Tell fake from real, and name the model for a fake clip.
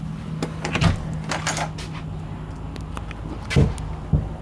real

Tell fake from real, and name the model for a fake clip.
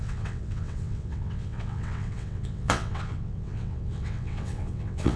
fake, vocoder, WaveNeXt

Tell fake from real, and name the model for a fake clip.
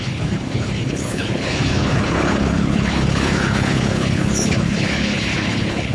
fake, codec, HILCodec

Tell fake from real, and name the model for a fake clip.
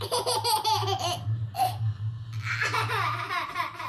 real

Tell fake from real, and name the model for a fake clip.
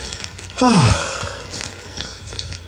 fake, codec, SNAC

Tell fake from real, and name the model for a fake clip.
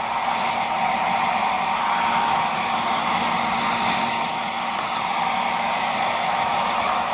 real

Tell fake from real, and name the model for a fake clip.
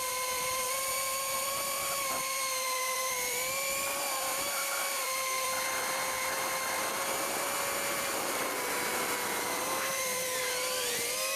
fake, vocoder, BigVGAN v2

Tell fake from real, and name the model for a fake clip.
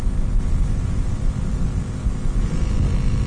real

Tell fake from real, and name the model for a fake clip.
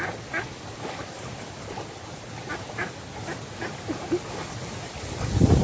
real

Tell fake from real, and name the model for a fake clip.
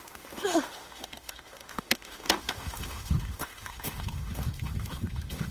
fake, autoencoder, DAC-VAE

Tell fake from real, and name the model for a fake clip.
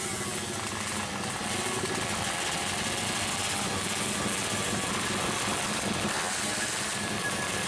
real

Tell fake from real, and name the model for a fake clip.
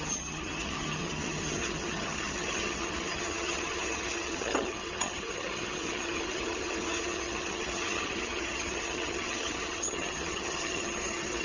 fake, vocoder, HiFi-GAN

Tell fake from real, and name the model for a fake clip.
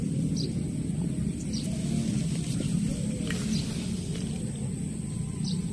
real